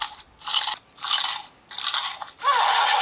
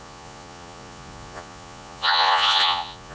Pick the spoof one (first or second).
second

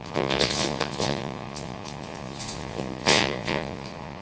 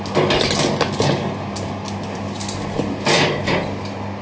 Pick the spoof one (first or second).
first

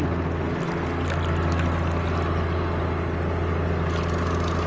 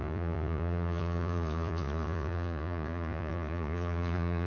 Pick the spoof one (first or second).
second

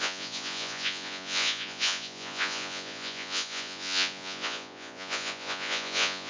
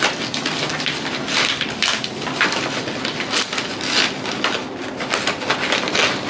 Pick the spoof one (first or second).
first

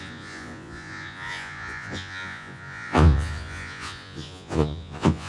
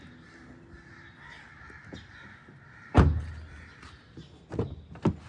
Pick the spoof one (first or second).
first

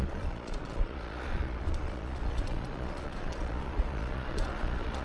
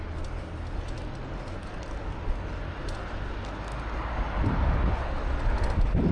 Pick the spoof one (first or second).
first